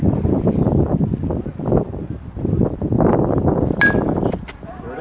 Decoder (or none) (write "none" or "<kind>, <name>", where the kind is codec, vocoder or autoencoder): none